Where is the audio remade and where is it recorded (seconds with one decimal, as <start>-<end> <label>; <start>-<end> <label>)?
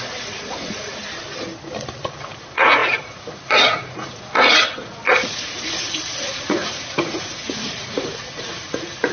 0.0-1.0 remade; 1.0-2.2 recorded; 2.2-9.1 remade